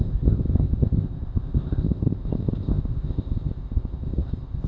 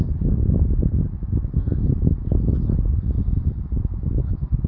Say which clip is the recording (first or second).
second